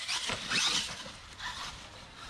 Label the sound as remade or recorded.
recorded